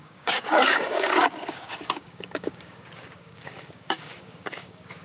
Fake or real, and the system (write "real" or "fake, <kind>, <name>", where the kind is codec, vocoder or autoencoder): fake, codec, DAC